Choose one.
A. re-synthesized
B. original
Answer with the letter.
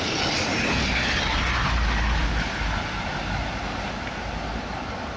B